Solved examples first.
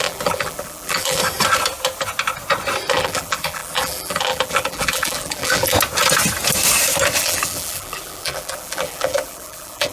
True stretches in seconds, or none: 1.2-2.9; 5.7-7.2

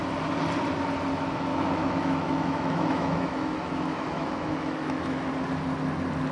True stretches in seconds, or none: 0.0-1.5; 5.3-6.3